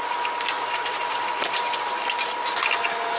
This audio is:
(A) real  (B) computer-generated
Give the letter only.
A